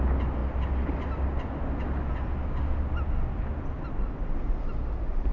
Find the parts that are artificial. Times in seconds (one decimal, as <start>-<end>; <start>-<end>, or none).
none